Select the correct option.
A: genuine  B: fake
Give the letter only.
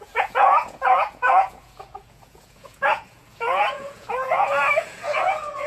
B